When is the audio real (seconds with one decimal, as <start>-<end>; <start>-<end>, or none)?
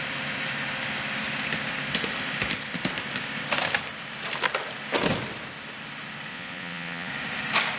0.0-6.3; 7.1-7.8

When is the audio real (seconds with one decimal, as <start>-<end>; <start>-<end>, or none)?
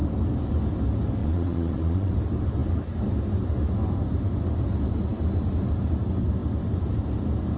0.0-1.2; 2.1-7.6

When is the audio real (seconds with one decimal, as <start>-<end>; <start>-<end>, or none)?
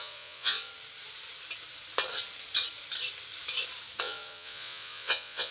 0.7-4.0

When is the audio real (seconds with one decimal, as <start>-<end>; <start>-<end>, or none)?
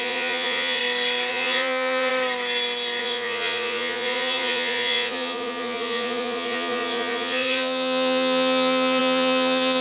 0.8-1.3; 2.1-3.0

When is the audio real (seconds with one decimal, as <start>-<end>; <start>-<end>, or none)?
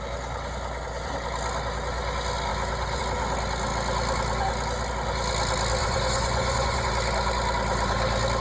0.0-5.8; 6.9-8.4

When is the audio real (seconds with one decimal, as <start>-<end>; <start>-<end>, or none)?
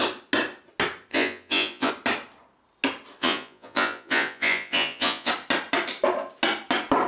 0.0-1.1; 1.9-3.2; 5.3-7.1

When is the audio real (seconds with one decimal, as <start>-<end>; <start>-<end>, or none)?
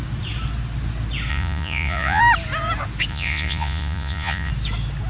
0.0-1.3; 2.2-3.1; 4.5-5.1